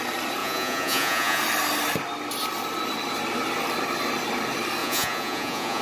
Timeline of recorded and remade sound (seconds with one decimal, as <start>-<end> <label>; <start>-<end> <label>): 0.0-0.4 recorded; 0.4-1.4 remade; 1.4-4.8 recorded; 4.8-5.8 remade